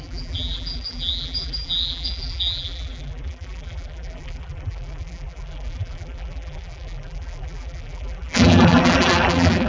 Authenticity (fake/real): fake